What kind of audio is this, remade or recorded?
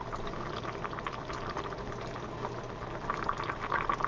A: recorded